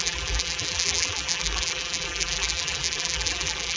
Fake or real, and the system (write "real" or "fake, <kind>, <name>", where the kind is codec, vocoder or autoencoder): fake, vocoder, BigVGAN v2